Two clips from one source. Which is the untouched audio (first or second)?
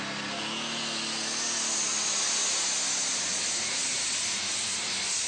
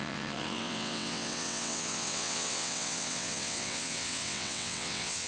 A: first